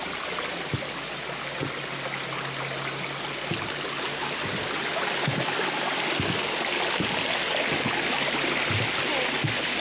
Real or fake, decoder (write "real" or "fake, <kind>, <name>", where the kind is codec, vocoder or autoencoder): real